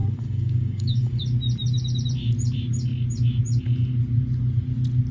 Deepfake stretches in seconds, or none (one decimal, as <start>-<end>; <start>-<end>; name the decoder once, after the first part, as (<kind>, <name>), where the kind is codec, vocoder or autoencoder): 0.0-1.2 (codec, DAC)

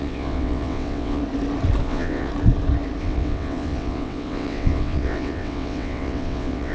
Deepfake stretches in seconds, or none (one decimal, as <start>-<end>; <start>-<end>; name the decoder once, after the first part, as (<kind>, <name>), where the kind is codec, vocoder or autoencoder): 0.0-1.2 (vocoder, WaveNeXt); 1.8-2.3; 3.0-6.7

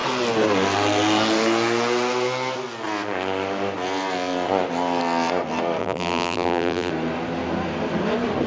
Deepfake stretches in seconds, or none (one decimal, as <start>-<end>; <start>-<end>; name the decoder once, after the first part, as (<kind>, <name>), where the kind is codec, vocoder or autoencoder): 5.8-6.9 (vocoder, BigVGAN v2)

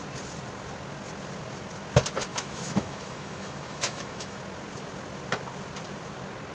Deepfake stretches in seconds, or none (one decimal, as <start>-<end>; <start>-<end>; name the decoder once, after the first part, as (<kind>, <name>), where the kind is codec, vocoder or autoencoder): 2.3-4.4 (autoencoder, DAC-VAE)

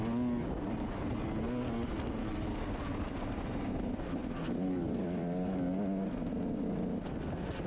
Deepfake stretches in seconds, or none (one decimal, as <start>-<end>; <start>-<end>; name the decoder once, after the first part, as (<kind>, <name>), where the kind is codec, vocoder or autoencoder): none

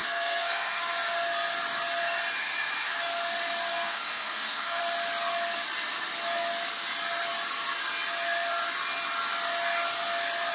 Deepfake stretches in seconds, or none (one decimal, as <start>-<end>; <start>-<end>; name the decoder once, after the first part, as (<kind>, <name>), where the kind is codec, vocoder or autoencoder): 0.0-0.9 (codec, SNAC); 3.7-4.8

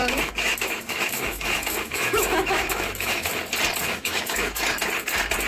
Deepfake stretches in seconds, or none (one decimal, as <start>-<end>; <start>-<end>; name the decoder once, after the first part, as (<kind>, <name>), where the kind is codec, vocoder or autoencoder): 0.0-3.3 (autoencoder, DAC-VAE); 3.8-4.6

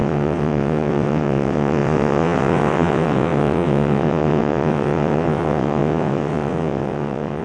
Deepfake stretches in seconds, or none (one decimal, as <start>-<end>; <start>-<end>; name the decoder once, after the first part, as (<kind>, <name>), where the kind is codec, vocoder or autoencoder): 0.0-7.4 (vocoder, WaveNeXt)